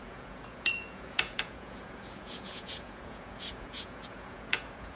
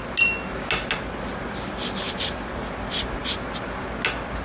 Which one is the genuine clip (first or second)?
second